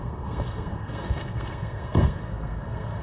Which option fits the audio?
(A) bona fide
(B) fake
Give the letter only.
B